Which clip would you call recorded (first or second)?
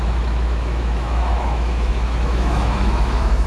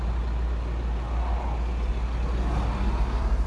second